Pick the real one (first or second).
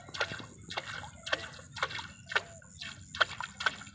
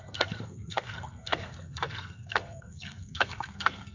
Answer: first